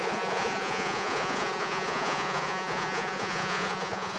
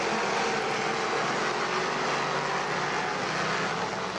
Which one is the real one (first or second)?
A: second